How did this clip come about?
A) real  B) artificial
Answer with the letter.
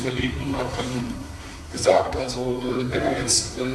B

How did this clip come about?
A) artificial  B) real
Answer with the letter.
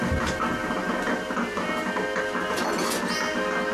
B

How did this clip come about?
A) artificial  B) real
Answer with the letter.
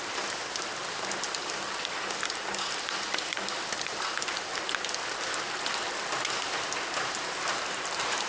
B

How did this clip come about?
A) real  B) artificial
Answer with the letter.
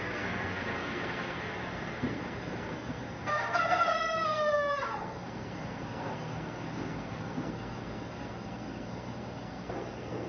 B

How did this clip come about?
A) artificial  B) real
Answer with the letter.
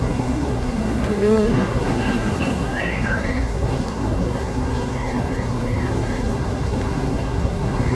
A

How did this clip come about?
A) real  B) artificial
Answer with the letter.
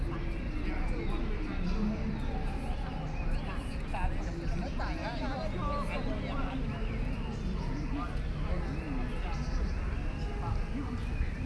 A